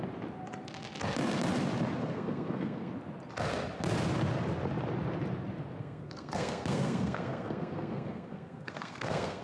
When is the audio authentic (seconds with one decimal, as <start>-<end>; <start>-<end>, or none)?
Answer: 0.0-2.0; 2.9-5.8